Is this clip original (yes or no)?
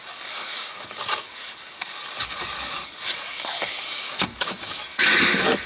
no